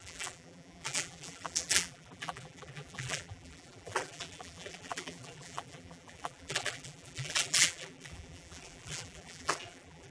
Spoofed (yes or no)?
yes